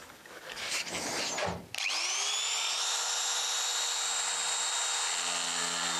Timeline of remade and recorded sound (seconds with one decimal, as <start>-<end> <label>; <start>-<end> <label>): 0.0-1.1 remade; 1.1-6.0 recorded